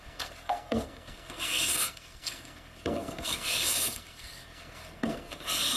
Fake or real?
fake